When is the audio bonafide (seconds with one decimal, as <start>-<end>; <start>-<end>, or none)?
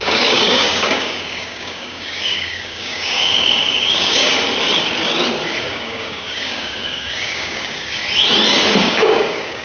4.3-5.6; 8.0-8.8